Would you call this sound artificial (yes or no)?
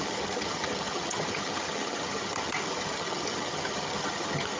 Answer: yes